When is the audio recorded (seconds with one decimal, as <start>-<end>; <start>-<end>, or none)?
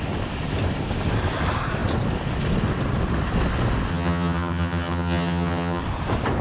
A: 0.0-3.9; 5.8-6.4